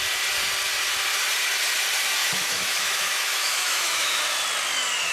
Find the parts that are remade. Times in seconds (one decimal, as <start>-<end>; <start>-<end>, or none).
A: 2.2-4.2